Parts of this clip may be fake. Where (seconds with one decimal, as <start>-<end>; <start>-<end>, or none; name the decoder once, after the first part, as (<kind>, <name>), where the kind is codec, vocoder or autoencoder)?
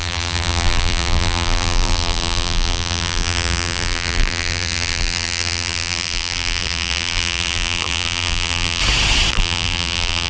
0.0-8.8 (vocoder, BigVGAN v2); 9.3-10.3